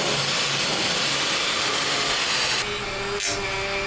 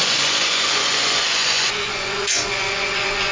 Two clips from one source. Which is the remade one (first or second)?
second